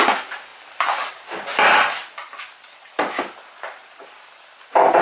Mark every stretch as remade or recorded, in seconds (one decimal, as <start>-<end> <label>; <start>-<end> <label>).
0.0-0.5 recorded; 0.5-1.1 remade; 1.1-5.0 recorded